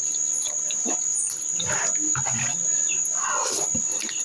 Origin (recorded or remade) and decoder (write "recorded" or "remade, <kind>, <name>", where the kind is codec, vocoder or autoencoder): recorded